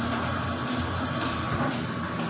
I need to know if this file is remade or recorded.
recorded